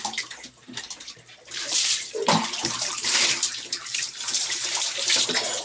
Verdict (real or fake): fake